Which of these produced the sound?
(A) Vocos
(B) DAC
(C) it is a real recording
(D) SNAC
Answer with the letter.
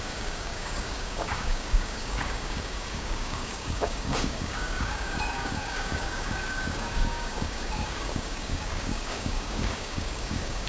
B